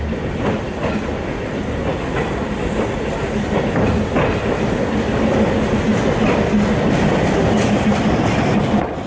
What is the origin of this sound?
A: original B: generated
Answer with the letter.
A